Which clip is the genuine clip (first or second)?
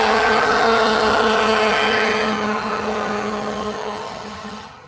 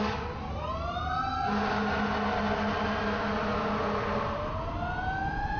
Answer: second